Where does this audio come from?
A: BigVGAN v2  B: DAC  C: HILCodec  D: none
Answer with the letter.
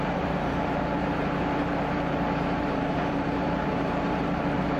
A